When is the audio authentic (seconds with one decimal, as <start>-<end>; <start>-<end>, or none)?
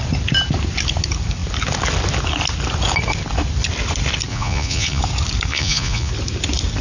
0.0-4.3; 5.0-5.5; 6.1-6.8